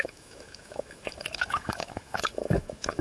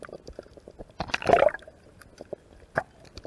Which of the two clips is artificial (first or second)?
first